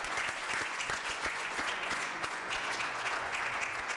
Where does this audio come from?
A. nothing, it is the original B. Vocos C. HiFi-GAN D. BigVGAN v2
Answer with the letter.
B